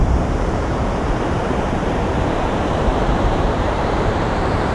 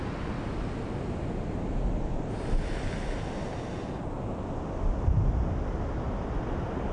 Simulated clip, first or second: first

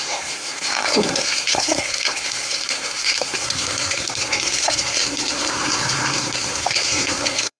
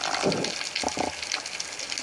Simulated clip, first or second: first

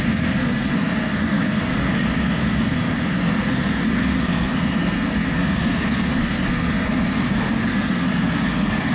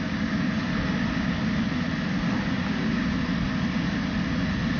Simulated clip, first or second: first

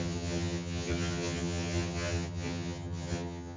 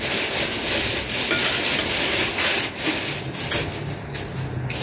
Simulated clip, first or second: first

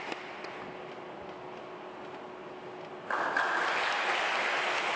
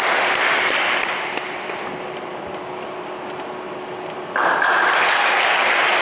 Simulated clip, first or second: second